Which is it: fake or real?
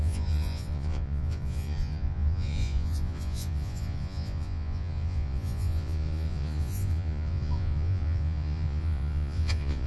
fake